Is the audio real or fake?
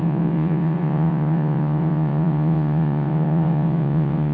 fake